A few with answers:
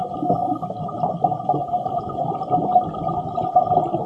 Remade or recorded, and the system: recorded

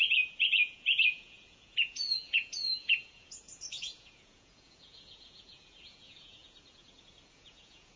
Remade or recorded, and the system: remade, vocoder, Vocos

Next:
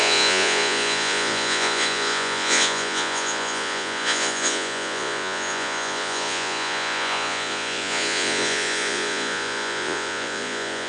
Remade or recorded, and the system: remade, vocoder, Vocos